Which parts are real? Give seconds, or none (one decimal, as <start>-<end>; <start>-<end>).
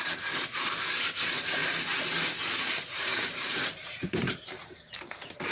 0.0-1.6; 4.9-5.5